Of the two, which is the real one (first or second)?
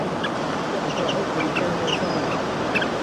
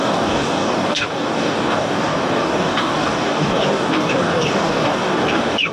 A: first